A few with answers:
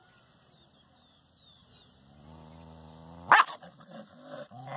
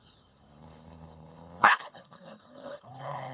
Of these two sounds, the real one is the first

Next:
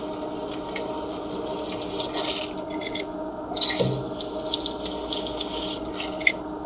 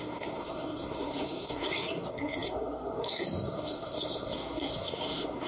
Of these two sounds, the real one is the first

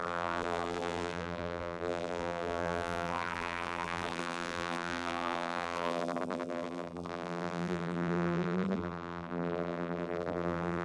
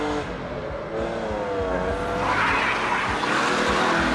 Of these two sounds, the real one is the second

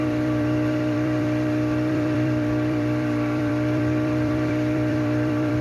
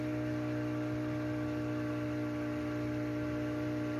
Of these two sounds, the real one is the second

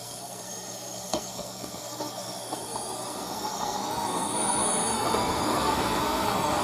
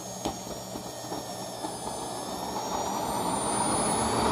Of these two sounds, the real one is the second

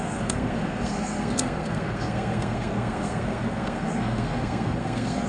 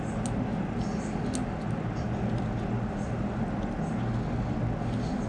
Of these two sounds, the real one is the second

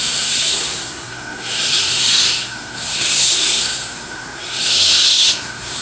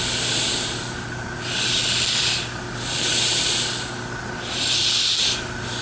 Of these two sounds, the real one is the second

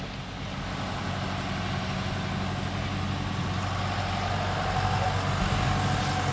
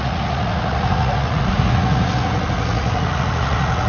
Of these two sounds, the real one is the first